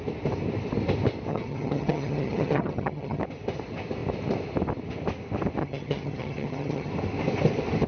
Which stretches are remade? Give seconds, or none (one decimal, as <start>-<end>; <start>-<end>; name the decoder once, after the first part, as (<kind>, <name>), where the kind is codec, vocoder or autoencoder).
1.3-3.2 (vocoder, HiFi-GAN); 5.6-6.9